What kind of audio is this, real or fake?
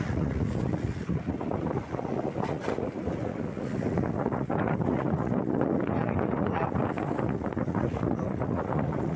fake